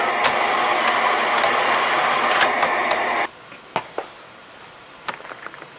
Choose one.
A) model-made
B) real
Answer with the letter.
B